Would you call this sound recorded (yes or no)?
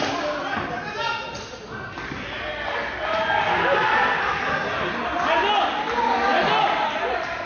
yes